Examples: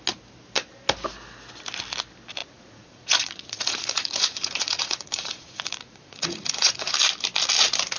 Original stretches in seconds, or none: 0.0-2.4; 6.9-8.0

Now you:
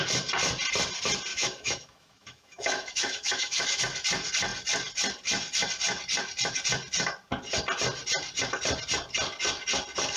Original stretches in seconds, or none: 0.0-1.3; 3.8-10.2

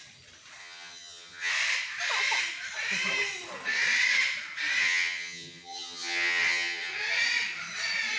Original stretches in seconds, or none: 0.0-0.6; 1.5-4.8; 6.9-8.2

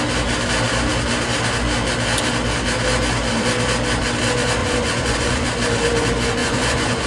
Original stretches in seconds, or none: 0.0-4.6; 5.5-6.4

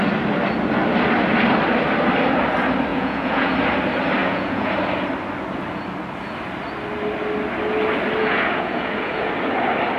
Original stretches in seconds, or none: 0.0-2.9; 3.5-4.2; 4.7-8.2; 9.3-10.0

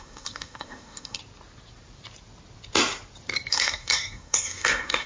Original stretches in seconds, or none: 1.2-3.5

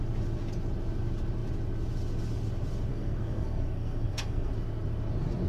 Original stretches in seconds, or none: 0.0-2.9; 4.5-5.5